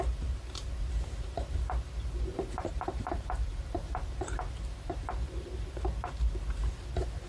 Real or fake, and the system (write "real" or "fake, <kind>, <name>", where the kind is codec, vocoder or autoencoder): fake, vocoder, BigVGAN v2